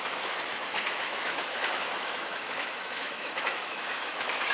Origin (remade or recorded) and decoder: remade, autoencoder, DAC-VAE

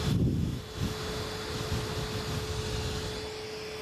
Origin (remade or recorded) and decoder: recorded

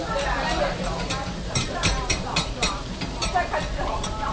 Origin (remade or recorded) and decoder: remade, vocoder, BigVGAN v2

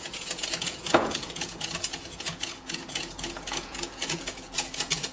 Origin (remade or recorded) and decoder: remade, vocoder, Vocos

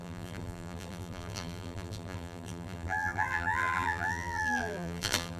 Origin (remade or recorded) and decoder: remade, vocoder, BigVGAN v2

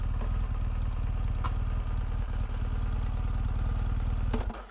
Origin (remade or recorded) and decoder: recorded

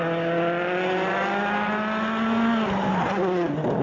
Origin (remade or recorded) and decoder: recorded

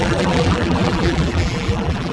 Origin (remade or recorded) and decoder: remade, vocoder, BigVGAN v2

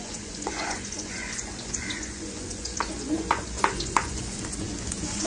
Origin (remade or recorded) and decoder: remade, vocoder, Vocos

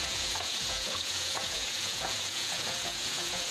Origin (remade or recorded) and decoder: remade, vocoder, Vocos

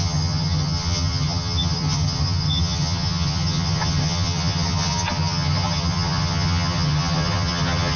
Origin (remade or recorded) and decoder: remade, vocoder, HiFi-GAN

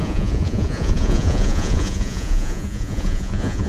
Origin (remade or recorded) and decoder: remade, vocoder, Vocos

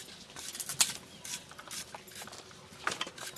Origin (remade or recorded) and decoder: recorded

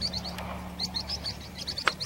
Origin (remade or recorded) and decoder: recorded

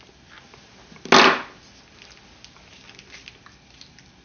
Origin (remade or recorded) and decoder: recorded